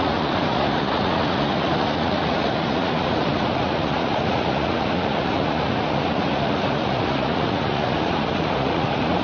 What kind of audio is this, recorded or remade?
remade